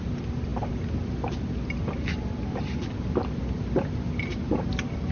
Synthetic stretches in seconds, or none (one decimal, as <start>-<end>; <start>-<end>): none